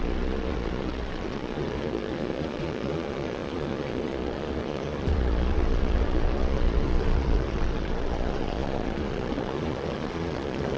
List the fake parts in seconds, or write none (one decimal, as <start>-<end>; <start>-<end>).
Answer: 0.0-10.8